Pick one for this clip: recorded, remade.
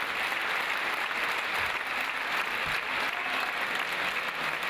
recorded